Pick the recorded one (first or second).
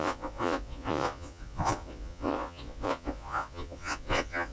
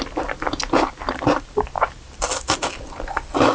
second